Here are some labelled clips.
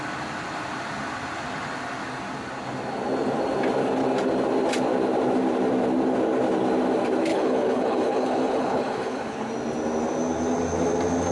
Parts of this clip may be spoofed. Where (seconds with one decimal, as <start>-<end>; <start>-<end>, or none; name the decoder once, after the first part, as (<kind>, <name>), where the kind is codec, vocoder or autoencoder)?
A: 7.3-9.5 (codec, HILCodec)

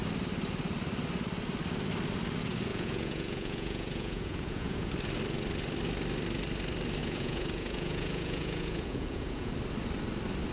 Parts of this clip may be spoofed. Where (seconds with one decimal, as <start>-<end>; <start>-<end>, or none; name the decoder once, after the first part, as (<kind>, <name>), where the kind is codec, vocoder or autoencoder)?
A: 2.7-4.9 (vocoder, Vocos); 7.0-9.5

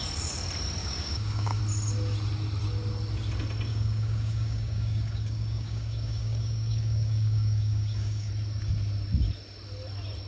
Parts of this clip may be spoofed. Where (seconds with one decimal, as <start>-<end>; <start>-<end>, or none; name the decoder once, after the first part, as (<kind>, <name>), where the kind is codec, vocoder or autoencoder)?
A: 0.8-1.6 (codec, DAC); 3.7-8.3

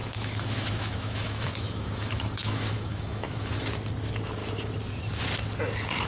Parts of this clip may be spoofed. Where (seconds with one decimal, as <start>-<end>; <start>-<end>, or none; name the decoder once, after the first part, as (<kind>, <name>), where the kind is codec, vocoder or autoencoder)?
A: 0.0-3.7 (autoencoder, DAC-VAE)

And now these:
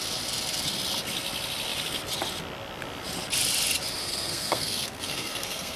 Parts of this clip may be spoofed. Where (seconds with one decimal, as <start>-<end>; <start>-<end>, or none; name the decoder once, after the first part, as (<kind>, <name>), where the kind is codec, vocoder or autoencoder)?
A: 4.0-5.8 (codec, SNAC)

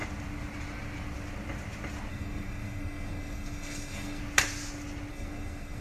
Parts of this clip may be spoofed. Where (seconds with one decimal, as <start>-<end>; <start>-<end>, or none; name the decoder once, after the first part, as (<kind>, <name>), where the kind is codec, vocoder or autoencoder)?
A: 2.1-4.2 (codec, SNAC); 5.1-5.8